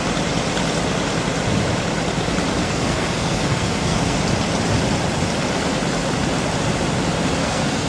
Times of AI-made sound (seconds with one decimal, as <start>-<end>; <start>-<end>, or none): 2.6-4.2; 7.4-7.9